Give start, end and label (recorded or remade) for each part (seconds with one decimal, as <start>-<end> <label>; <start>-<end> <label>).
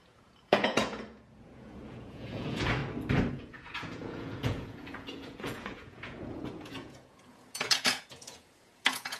0.0-2.8 remade; 2.8-3.3 recorded; 3.3-9.2 remade